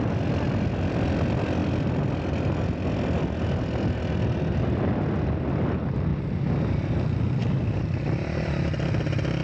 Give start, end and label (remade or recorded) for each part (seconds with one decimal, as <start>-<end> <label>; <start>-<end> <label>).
0.0-9.4 recorded